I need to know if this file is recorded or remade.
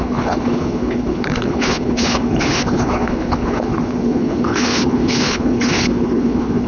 remade